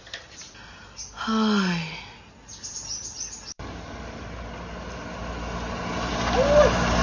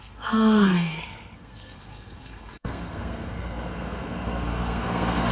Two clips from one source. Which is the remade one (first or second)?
second